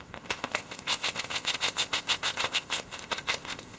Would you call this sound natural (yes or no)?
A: no